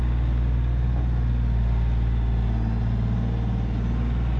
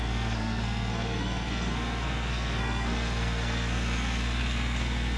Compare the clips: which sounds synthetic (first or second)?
second